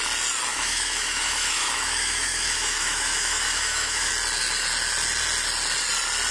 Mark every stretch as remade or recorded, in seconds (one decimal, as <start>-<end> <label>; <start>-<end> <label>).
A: 0.0-0.5 recorded; 0.5-4.1 remade; 4.1-6.3 recorded